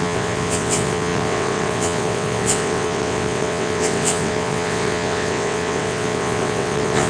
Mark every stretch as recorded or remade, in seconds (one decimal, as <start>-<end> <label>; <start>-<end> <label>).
0.0-7.1 remade